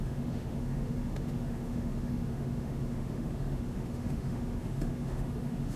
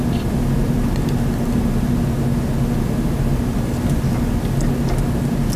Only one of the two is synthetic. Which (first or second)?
first